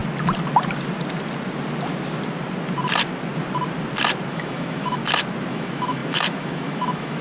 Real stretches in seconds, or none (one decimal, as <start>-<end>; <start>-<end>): 0.0-4.3; 5.0-5.5